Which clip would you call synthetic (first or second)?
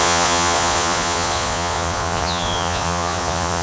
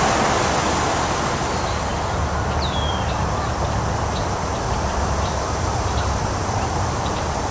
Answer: first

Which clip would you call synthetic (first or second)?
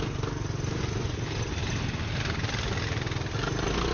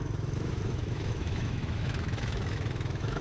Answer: second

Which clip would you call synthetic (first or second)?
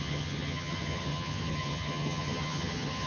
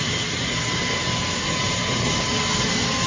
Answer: first